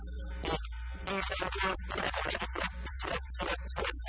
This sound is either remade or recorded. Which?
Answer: remade